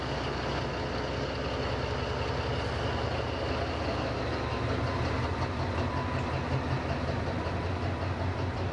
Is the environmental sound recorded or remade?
recorded